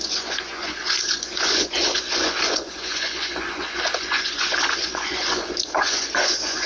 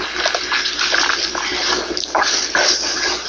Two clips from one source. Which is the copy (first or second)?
first